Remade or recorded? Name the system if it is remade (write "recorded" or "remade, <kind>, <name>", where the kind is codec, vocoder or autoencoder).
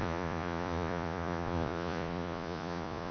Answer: remade, vocoder, Vocos